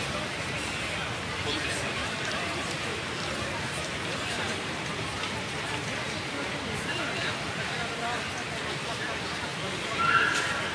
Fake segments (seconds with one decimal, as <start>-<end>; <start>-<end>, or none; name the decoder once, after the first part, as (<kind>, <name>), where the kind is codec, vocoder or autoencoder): 2.9-4.7 (vocoder, BigVGAN v2)